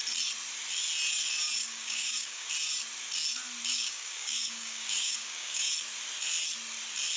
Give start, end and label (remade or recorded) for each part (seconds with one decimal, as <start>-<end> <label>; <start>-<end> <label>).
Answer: 0.0-1.6 recorded; 1.6-2.5 remade; 2.5-3.7 recorded; 3.7-5.7 remade; 5.7-7.2 recorded